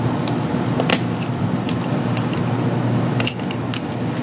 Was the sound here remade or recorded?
recorded